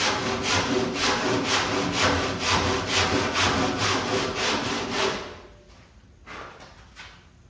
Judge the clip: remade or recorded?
recorded